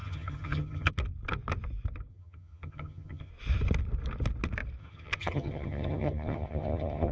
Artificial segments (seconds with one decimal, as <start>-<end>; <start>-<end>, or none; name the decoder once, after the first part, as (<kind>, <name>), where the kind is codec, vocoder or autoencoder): 0.0-0.9 (vocoder, HiFi-GAN); 2.1-3.3; 4.8-7.1